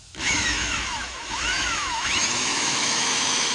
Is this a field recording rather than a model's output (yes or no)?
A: no